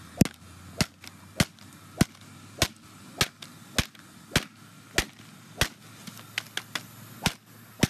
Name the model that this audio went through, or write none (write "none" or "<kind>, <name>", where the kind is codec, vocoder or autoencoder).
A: none